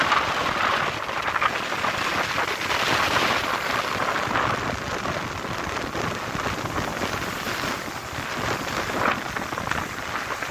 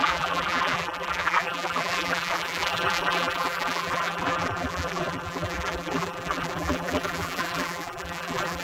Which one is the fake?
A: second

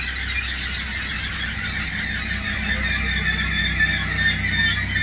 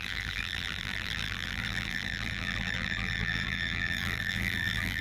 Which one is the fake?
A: second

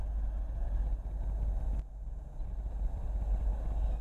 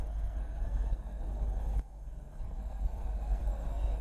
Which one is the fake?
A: second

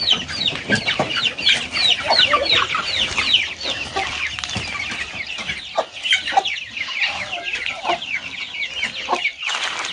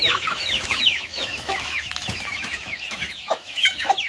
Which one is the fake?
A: second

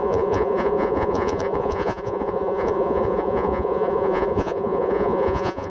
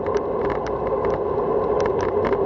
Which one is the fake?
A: first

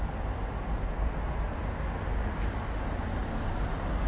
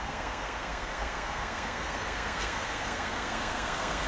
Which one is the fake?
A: second